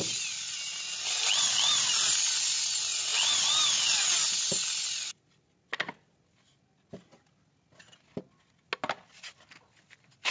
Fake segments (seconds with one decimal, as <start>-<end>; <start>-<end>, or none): none